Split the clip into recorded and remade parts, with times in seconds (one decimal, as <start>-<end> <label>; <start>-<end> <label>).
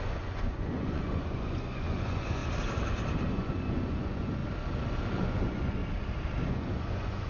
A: 0.0-2.4 remade; 2.4-3.3 recorded; 3.3-4.4 remade; 4.4-5.1 recorded; 5.1-5.8 remade; 5.8-6.5 recorded; 6.5-7.3 remade